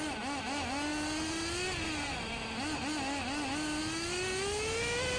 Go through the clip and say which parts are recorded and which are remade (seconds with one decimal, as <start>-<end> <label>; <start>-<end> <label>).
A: 0.0-5.2 recorded